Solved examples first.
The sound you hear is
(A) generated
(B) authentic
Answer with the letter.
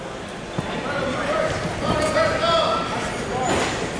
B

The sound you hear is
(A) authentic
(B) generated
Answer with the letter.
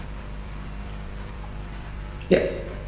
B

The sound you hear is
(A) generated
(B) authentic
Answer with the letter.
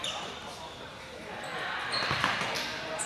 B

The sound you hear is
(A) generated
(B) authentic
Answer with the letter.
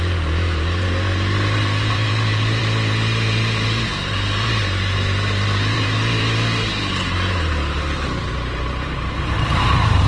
A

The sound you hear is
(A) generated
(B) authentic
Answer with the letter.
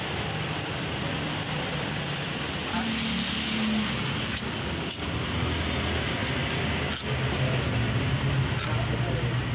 B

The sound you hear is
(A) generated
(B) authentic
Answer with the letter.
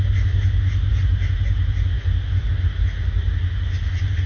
B